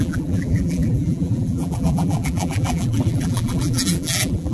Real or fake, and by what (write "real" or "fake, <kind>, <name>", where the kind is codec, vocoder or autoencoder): fake, vocoder, BigVGAN v2